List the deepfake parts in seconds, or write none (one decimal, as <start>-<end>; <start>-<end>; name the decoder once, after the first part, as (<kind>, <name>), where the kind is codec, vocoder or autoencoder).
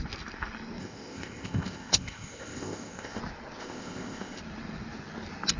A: 0.8-3.2 (codec, ZipCodec); 3.6-4.4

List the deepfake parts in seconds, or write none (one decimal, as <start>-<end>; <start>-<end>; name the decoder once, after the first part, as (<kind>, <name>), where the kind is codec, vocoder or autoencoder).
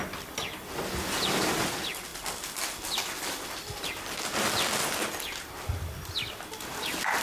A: none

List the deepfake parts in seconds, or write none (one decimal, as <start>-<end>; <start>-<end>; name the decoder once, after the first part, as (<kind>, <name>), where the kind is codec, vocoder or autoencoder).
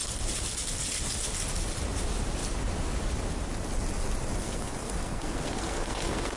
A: 4.4-6.4 (codec, SNAC)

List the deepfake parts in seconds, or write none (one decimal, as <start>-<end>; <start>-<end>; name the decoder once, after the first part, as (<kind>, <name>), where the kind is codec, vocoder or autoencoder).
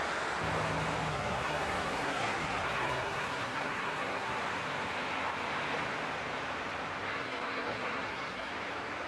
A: 1.1-4.4 (codec, SNAC); 7.1-8.5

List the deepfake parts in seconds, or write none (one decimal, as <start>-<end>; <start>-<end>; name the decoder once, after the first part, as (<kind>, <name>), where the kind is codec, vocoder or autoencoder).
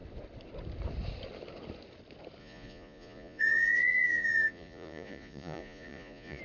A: 2.4-6.4 (vocoder, Vocos)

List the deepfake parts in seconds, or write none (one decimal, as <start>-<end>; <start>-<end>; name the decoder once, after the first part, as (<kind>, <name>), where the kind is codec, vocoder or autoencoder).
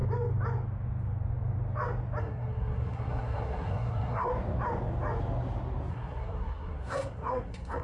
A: 2.2-4.3 (codec, SNAC); 5.9-7.8